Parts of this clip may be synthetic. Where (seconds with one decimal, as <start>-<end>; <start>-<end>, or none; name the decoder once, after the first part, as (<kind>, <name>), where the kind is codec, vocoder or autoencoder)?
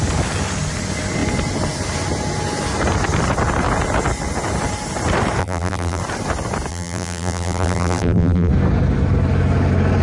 5.4-6.0 (vocoder, BigVGAN v2); 6.7-8.5